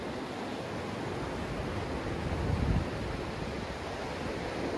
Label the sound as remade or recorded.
recorded